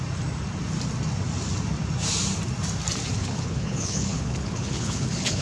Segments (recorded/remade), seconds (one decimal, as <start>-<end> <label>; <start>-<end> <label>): 0.0-3.2 recorded; 3.2-5.4 remade